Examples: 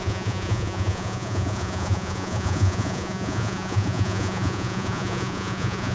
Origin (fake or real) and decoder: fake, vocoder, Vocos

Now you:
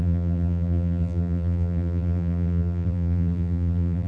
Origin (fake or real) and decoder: fake, vocoder, BigVGAN v2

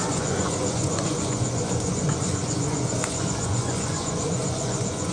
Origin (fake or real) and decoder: fake, vocoder, Vocos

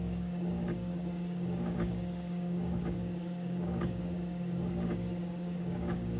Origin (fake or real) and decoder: fake, codec, DAC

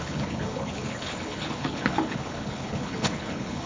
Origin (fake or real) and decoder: fake, codec, HILCodec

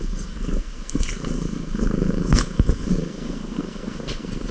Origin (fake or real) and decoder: fake, codec, SNAC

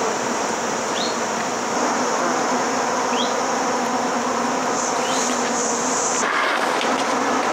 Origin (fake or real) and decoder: real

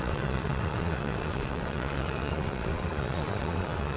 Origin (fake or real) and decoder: fake, vocoder, WaveNeXt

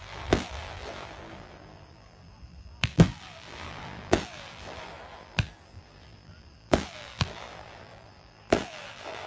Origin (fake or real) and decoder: fake, vocoder, BigVGAN v2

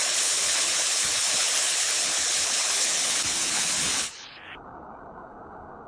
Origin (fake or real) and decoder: fake, codec, HILCodec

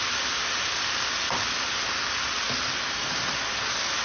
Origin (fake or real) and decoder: real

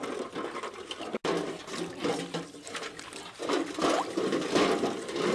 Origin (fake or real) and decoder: real